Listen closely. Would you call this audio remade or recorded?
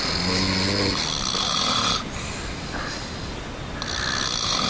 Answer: recorded